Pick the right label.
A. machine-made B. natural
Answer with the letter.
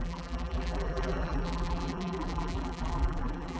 A